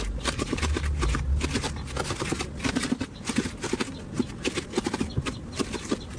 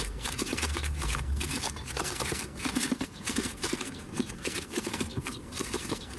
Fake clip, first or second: second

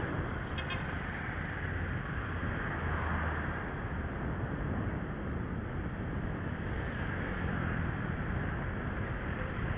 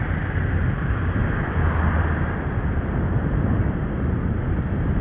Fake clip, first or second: second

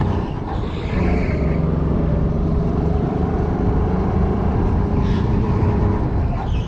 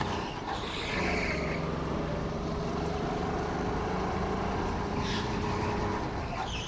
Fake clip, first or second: first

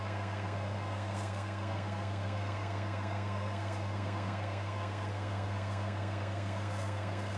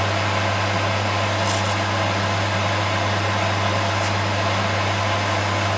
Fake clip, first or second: first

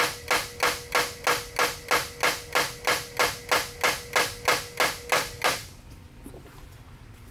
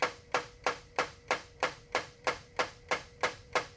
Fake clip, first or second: second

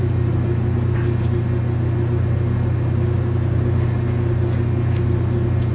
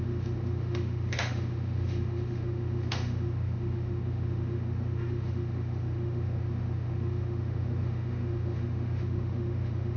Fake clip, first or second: second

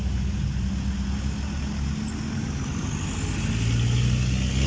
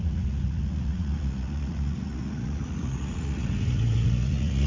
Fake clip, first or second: second